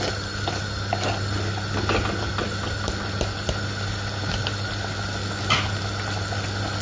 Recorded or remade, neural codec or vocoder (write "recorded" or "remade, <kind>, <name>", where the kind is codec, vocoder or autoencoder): recorded